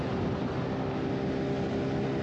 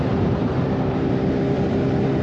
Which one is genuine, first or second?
first